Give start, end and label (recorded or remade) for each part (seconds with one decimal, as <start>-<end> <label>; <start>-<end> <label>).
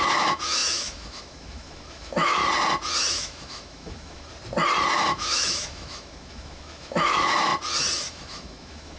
0.0-2.4 remade; 2.4-3.1 recorded; 3.1-4.3 remade; 4.3-4.9 recorded; 4.9-7.5 remade; 7.5-8.1 recorded; 8.1-9.0 remade